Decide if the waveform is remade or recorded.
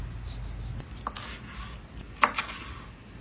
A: recorded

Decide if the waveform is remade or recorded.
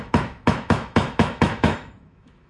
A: remade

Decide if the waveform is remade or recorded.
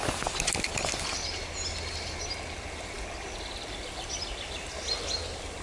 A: recorded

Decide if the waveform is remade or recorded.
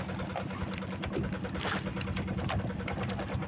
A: recorded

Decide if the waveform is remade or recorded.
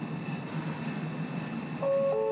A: recorded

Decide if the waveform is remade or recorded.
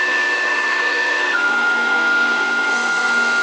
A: remade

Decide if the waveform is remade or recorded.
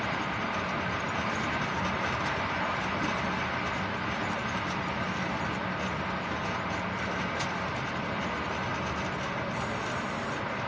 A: recorded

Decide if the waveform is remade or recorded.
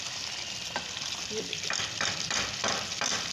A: recorded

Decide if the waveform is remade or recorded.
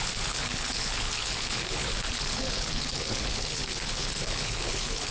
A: remade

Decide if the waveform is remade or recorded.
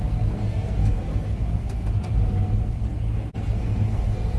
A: remade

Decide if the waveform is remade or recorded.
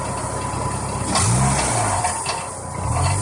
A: recorded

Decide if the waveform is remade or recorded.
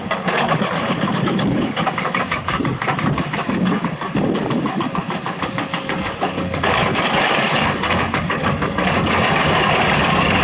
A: remade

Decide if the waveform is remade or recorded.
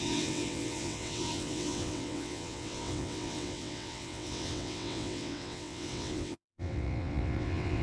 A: remade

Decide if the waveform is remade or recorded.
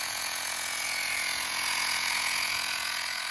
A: remade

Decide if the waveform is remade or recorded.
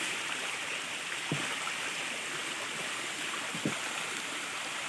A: recorded